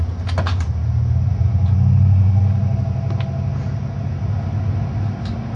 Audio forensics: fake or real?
real